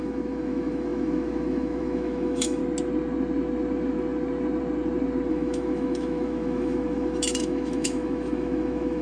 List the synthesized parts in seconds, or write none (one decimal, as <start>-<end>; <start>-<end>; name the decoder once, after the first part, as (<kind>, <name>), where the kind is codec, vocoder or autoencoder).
0.0-2.6 (autoencoder, DAC-VAE); 5.3-9.0